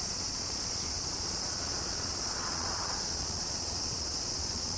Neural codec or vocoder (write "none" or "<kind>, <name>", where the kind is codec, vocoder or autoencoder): vocoder, Vocos